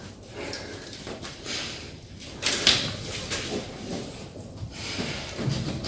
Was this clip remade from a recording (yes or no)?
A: yes